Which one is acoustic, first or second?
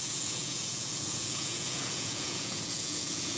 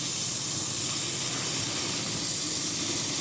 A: second